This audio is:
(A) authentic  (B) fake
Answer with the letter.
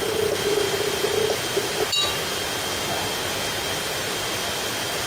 A